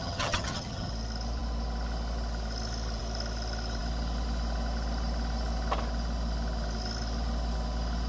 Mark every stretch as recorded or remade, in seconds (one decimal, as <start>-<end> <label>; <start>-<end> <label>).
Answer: 0.0-0.9 remade; 0.9-8.1 recorded